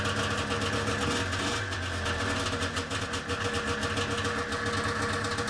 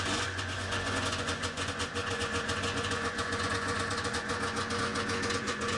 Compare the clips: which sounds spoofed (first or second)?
second